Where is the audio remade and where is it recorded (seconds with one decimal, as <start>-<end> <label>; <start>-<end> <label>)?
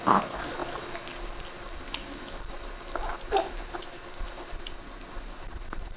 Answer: 0.0-6.0 recorded